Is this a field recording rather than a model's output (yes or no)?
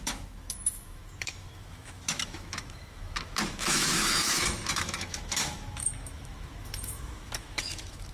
no